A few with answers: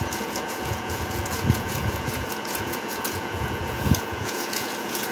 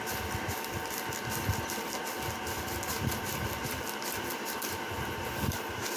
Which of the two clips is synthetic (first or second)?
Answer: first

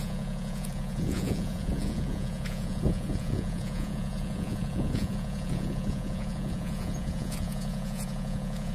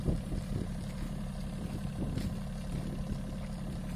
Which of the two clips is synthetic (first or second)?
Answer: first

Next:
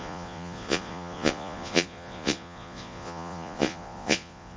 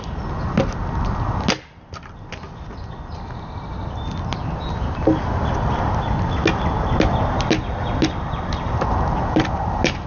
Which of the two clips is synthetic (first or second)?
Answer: first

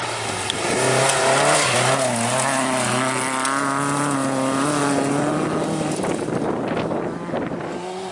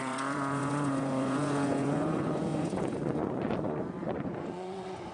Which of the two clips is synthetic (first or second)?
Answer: second